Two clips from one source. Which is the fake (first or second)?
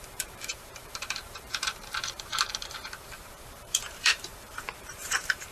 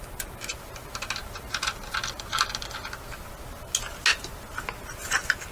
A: first